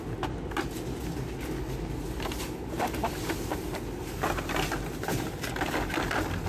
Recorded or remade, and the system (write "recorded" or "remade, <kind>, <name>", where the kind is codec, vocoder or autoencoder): recorded